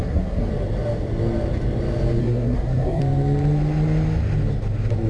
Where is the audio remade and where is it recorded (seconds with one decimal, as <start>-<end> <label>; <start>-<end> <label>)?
0.0-0.5 remade; 0.5-2.2 recorded; 2.2-3.0 remade; 3.0-5.1 recorded